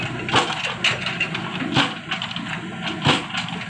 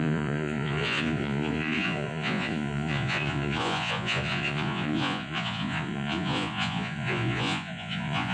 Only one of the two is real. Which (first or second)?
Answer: first